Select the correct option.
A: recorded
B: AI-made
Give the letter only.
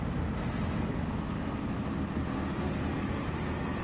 A